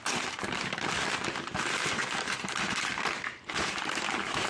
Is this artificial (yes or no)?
no